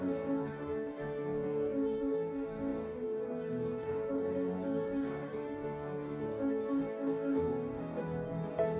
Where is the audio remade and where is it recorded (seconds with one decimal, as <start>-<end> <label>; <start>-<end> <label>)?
0.0-8.8 remade